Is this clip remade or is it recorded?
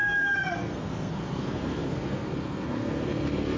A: remade